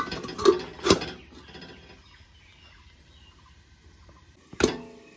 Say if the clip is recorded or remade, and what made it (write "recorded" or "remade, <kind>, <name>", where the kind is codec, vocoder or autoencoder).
recorded